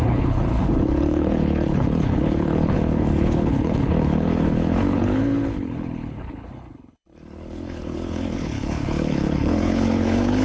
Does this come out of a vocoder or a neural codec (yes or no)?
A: yes